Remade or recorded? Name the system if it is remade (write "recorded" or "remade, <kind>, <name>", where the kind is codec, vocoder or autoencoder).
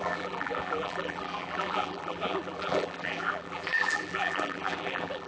remade, vocoder, BigVGAN v2